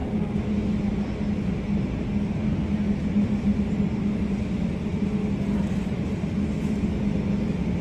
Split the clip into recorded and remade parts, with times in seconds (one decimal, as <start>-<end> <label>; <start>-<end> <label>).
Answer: 0.0-7.8 recorded